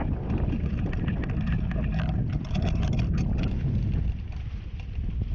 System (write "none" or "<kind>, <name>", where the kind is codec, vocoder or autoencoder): none